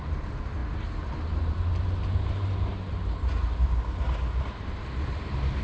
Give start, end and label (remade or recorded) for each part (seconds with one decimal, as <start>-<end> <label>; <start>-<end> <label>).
0.0-5.6 recorded